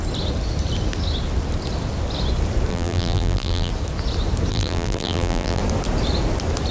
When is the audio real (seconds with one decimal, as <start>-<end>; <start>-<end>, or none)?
0.0-2.7; 3.7-4.5; 5.6-6.7